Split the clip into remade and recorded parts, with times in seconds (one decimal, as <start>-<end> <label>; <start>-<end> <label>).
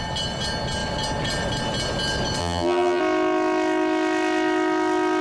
0.0-2.4 recorded; 2.4-3.0 remade; 3.0-5.2 recorded